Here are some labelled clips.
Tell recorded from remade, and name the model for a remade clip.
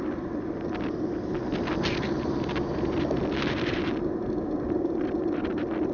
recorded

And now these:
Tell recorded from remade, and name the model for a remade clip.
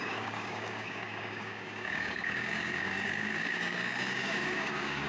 remade, codec, DAC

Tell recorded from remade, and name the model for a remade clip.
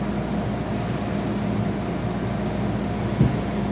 recorded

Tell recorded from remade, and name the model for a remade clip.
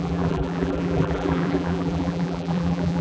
remade, vocoder, BigVGAN v2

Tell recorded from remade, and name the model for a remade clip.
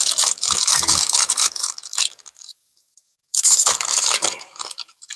remade, codec, DAC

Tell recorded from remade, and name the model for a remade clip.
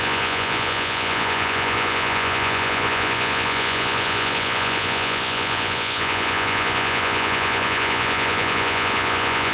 remade, vocoder, Vocos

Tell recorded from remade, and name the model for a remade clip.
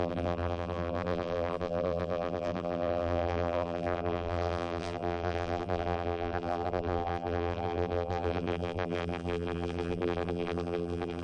remade, vocoder, BigVGAN v2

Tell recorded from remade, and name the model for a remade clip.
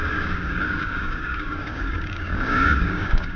remade, codec, DAC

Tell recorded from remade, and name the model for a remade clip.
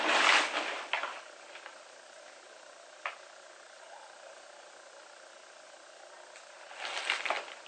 recorded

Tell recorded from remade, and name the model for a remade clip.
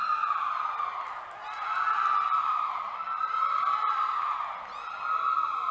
recorded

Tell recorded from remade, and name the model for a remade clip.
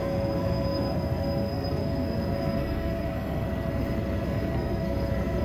remade, codec, SNAC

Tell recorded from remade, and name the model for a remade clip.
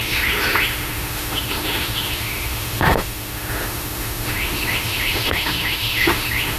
remade, autoencoder, DAC-VAE